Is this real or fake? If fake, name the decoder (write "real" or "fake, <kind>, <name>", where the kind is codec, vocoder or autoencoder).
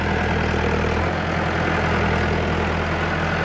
real